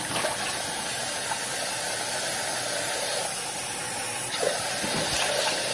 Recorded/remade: recorded